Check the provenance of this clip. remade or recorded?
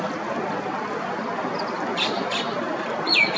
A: recorded